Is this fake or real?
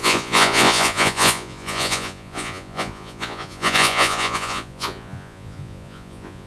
fake